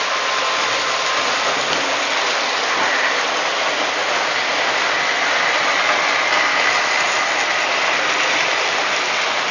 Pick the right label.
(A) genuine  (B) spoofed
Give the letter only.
A